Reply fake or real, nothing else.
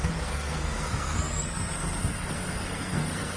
fake